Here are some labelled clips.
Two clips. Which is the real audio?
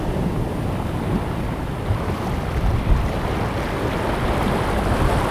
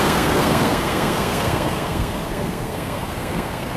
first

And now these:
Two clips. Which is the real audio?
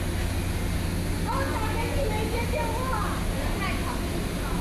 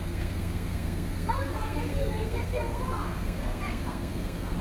first